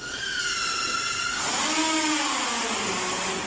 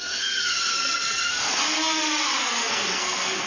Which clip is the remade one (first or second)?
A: second